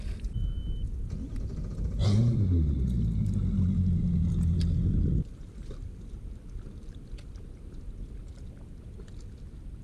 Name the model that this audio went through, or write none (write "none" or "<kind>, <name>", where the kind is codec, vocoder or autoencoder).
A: none